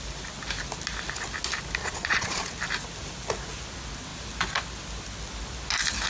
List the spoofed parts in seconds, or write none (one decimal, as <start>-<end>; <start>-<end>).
1.8-2.5